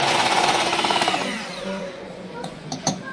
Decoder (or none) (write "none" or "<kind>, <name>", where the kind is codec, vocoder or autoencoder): vocoder, Vocos